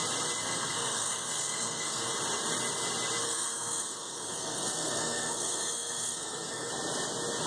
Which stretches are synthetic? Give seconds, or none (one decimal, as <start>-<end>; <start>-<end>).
0.4-2.1; 3.2-6.7